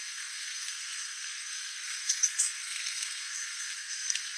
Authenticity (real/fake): fake